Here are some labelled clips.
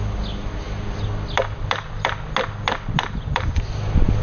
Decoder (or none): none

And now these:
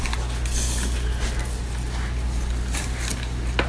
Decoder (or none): none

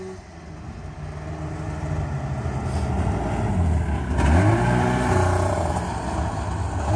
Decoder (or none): none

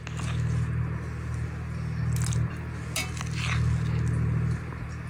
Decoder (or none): none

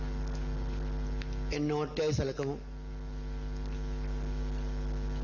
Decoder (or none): none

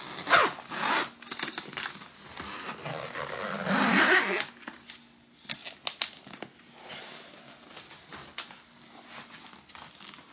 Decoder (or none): none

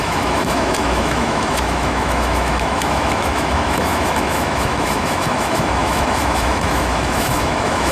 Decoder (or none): autoencoder, DAC-VAE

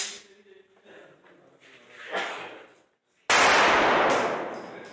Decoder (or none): none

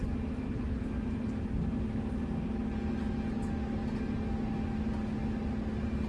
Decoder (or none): none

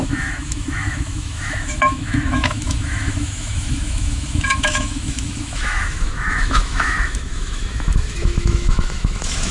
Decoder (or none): autoencoder, DAC-VAE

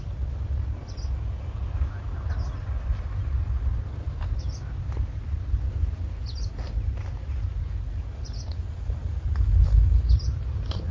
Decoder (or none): none